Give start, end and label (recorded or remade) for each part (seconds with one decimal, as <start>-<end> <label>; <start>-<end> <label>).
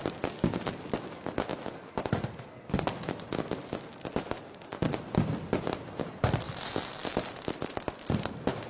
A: 0.0-8.7 recorded